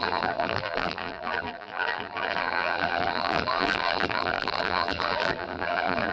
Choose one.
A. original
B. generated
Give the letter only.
B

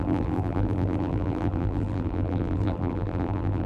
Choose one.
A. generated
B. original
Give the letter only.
A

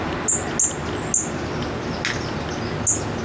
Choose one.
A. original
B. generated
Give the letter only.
A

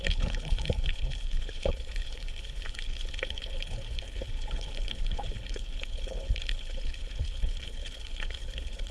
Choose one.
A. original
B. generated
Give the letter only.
B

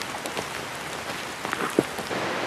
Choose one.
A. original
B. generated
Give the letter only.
A